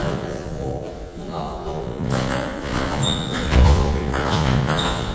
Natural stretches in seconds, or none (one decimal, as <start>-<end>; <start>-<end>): none